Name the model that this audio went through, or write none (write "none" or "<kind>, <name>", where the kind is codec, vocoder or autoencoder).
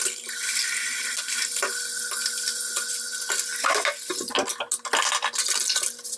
none